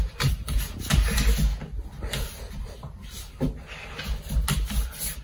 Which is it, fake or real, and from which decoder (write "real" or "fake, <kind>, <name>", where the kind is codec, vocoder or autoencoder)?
real